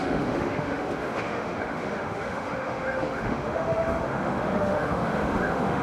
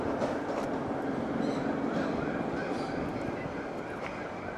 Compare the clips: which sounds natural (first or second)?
second